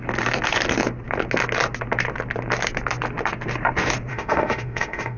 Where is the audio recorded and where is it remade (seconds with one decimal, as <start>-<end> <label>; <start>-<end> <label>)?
0.0-4.1 recorded; 4.1-5.2 remade